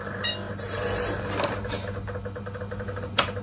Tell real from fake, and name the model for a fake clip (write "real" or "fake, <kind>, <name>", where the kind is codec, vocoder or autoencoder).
real